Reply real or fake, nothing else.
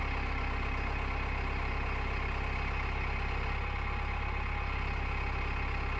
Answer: real